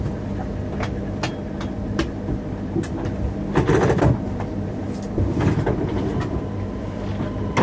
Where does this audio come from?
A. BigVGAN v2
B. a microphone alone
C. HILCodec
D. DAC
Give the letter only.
B